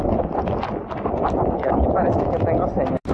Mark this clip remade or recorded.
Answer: recorded